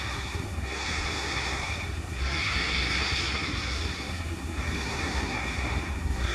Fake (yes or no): yes